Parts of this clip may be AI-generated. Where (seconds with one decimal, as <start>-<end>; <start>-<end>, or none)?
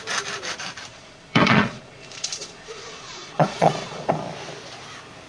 0.9-4.1